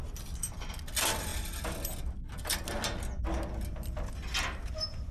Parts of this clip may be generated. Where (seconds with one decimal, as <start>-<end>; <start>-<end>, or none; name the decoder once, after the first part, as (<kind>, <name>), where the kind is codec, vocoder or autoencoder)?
none